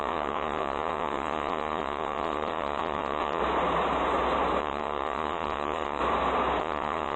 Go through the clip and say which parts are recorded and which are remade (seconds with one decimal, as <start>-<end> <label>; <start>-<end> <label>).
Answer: 0.0-3.4 remade; 3.4-4.6 recorded; 4.6-6.0 remade; 6.0-6.6 recorded; 6.6-7.2 remade